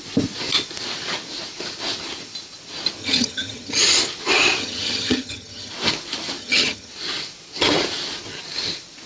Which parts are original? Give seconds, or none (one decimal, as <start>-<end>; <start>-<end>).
0.0-3.0; 3.8-4.6; 5.7-6.4; 6.9-9.1

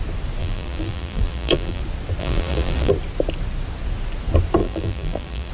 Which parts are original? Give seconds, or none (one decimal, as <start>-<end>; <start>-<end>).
0.0-0.4; 1.8-2.2; 2.9-4.6

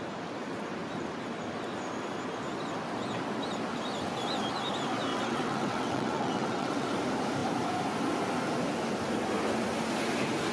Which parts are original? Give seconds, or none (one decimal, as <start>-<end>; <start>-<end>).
0.0-5.1; 6.9-10.5

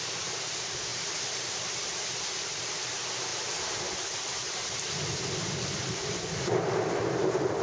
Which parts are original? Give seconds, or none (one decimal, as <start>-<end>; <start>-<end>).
0.0-7.6

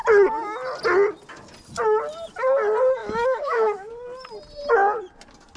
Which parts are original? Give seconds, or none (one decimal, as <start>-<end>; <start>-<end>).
0.0-3.0; 3.9-5.6

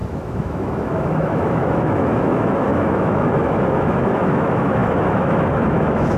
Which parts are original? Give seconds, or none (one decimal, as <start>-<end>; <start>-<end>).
none

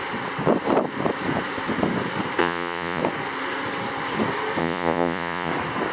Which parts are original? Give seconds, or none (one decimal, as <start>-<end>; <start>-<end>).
0.0-2.4; 3.0-4.6; 5.5-5.9

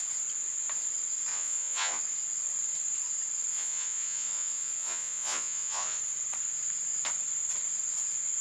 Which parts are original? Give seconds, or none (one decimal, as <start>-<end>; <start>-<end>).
0.0-1.3; 2.0-3.5; 6.0-8.4